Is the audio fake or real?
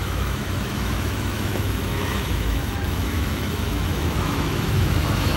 fake